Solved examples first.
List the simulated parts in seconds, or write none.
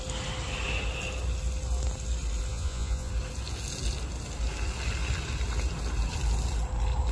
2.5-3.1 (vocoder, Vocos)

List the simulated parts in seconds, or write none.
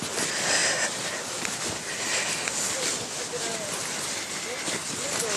none